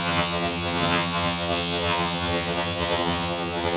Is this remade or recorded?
remade